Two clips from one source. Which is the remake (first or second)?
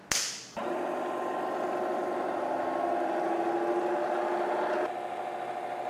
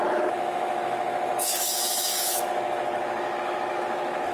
second